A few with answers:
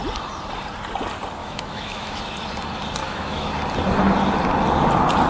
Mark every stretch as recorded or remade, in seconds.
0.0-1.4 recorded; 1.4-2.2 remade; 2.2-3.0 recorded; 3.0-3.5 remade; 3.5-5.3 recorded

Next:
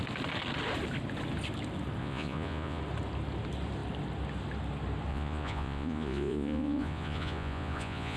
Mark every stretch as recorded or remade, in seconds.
0.0-2.0 recorded; 2.0-2.8 remade; 2.8-5.1 recorded; 5.1-8.2 remade

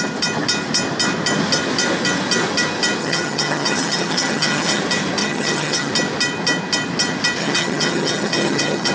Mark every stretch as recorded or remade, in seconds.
0.0-3.0 recorded; 3.0-4.8 remade; 4.8-5.2 recorded; 5.2-5.9 remade; 5.9-7.4 recorded; 7.4-8.9 remade

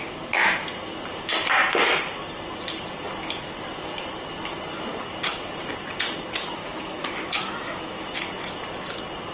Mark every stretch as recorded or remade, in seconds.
0.0-6.6 recorded; 6.6-8.2 remade; 8.2-9.3 recorded

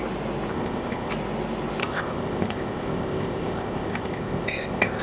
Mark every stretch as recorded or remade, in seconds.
0.0-0.5 recorded; 0.5-1.1 remade; 1.1-1.8 recorded; 1.8-5.0 remade

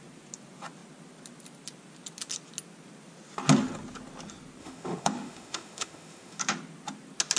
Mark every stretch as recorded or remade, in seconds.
0.0-4.6 recorded; 4.6-6.4 remade; 6.4-7.4 recorded

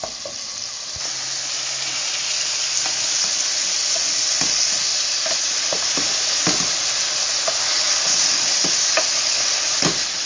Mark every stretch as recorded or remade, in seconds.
0.0-10.3 recorded

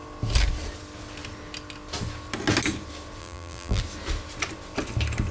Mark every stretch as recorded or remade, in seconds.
0.0-3.2 recorded; 3.2-3.8 remade; 3.8-5.3 recorded